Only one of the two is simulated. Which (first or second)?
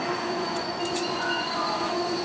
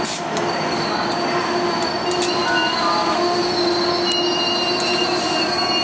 first